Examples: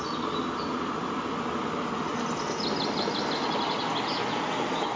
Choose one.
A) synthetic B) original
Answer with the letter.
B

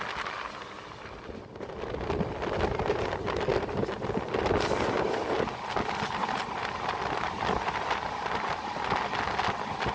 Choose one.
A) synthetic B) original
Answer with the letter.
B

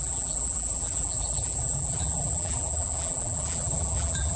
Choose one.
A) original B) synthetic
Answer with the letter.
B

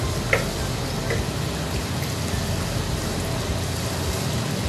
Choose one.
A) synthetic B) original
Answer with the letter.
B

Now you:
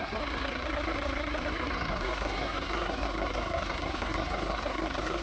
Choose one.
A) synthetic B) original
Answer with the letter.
A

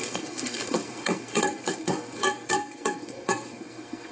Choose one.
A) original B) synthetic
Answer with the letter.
B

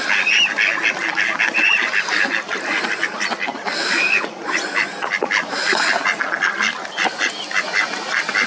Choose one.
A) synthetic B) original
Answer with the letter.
B